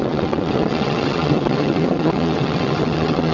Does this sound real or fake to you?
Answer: fake